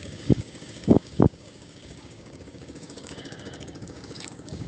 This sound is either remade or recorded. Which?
remade